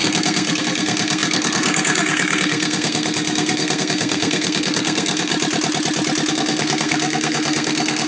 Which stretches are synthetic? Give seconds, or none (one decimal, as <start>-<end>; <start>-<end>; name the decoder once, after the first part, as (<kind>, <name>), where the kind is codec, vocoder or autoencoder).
0.0-5.3 (codec, SNAC); 6.3-8.1